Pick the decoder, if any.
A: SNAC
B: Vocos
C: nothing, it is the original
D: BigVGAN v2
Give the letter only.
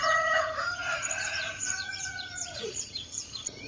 B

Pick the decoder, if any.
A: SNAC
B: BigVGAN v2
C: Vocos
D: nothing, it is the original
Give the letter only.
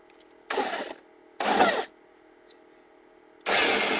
D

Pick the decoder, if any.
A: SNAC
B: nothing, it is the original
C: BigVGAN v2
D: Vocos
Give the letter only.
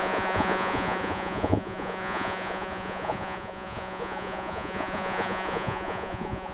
D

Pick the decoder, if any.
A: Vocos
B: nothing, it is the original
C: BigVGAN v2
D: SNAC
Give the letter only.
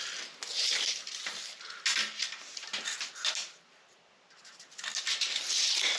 B